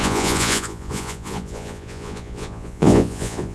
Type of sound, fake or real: fake